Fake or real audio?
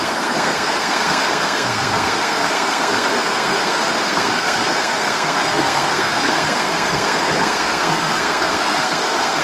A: fake